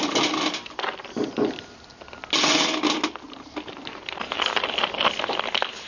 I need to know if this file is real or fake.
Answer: real